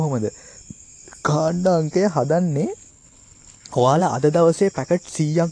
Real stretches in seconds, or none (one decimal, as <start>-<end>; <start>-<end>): 0.0-2.9; 4.0-5.5